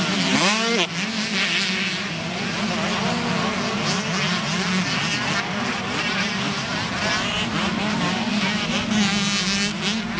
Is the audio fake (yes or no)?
no